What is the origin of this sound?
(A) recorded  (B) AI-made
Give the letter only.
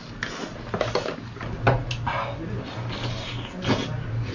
A